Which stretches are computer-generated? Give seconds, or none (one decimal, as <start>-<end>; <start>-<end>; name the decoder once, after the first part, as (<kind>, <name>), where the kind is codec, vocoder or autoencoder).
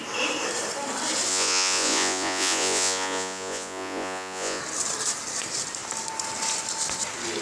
1.3-4.6 (vocoder, Vocos)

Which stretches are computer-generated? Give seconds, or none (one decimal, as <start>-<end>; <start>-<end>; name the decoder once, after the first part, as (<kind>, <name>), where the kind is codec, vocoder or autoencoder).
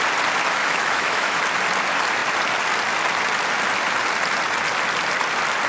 0.6-1.4 (autoencoder, DAC-VAE)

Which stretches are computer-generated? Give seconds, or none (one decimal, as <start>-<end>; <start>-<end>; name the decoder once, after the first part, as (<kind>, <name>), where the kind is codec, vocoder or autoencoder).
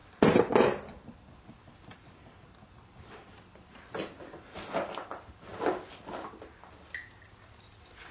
none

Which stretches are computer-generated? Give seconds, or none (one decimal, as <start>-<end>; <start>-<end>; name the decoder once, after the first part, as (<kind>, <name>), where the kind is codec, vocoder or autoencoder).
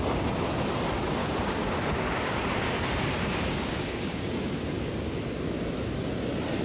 1.2-5.2 (codec, DAC)